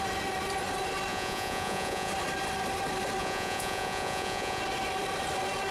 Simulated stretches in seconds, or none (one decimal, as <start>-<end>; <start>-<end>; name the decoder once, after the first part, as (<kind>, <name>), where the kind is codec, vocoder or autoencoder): 1.1-2.1 (vocoder, Vocos); 3.2-4.6